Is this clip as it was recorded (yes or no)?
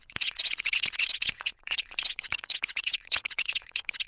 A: no